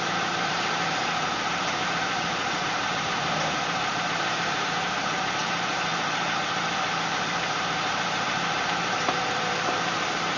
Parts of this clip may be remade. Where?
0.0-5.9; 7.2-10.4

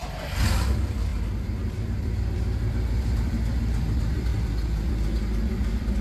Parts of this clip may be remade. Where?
0.7-4.3; 4.9-6.0

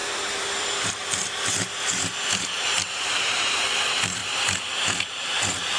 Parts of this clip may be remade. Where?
0.0-4.2; 4.8-5.8

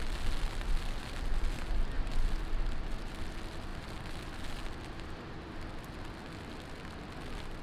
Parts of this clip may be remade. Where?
none